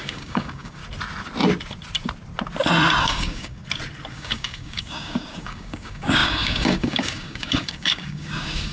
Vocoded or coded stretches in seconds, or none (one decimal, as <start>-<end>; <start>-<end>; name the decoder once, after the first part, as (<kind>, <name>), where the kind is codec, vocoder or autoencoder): 0.0-0.8 (codec, DAC); 3.0-3.6; 4.1-8.7